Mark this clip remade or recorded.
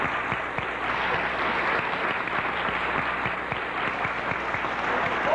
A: recorded